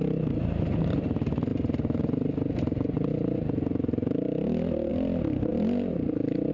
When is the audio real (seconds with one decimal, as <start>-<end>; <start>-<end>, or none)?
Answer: 0.0-6.5